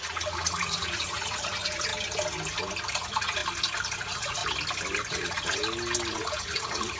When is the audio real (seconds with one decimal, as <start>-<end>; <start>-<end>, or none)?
1.9-2.9; 3.4-4.0; 4.4-5.1; 5.6-6.1